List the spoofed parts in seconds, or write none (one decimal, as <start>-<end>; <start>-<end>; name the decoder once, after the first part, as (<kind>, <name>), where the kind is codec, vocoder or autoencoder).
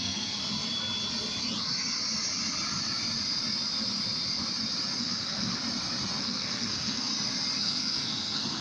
0.0-0.4 (codec, SNAC); 5.0-5.6; 6.2-7.1; 7.6-8.6